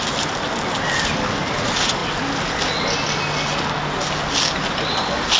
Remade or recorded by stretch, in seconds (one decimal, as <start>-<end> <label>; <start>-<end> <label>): 0.0-5.4 recorded

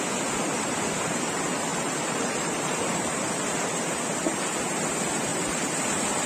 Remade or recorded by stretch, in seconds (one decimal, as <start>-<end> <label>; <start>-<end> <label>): 0.0-1.7 recorded; 1.7-3.3 remade; 3.3-5.3 recorded; 5.3-6.3 remade